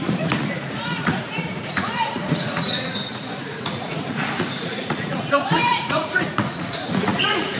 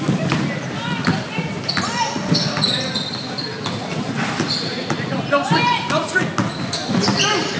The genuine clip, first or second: second